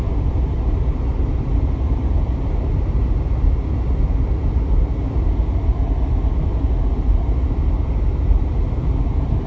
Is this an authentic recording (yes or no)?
yes